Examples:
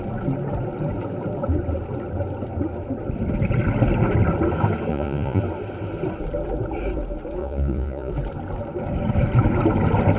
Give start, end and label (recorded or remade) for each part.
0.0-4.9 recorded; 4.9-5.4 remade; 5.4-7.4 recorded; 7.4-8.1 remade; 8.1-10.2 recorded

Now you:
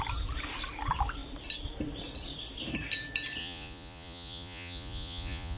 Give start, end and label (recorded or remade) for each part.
0.0-3.4 recorded; 3.4-5.6 remade

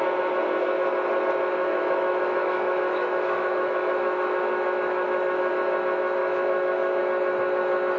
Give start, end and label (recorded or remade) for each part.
0.0-1.6 recorded; 1.6-5.5 remade; 5.5-6.2 recorded; 6.2-7.0 remade; 7.0-8.0 recorded